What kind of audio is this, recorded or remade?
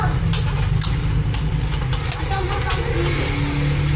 recorded